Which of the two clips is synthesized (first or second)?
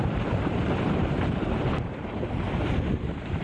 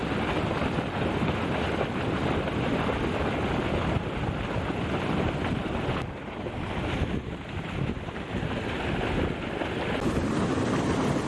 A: first